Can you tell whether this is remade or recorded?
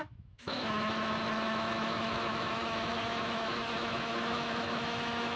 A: remade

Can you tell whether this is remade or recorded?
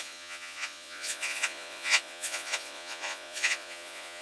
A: remade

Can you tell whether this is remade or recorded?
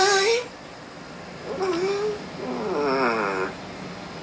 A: recorded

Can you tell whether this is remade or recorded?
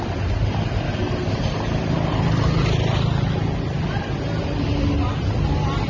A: recorded